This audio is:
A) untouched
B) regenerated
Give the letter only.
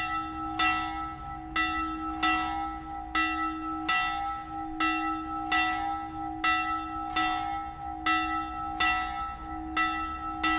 A